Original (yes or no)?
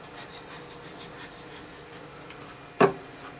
no